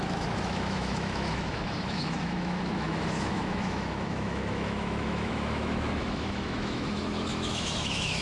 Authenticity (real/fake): fake